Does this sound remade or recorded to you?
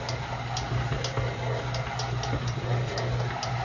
recorded